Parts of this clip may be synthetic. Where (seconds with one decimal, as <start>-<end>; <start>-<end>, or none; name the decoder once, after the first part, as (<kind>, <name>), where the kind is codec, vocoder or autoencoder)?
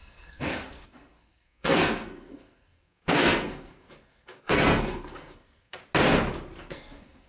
0.0-5.8 (codec, SNAC); 6.6-7.3